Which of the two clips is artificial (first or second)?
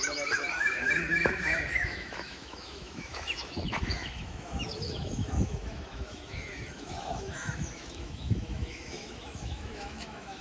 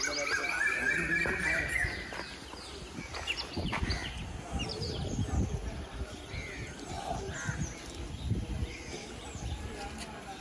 first